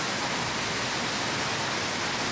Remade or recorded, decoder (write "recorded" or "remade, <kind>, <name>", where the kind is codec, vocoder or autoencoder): recorded